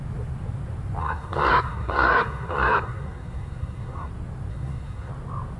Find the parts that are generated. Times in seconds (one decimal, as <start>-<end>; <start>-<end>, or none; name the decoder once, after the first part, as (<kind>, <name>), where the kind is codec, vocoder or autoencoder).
1.0-4.1 (codec, SNAC); 4.5-5.1